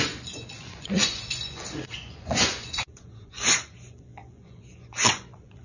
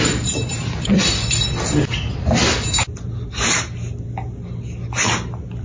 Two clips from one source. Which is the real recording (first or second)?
second